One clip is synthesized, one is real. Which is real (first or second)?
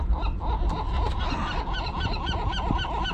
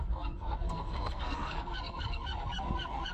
first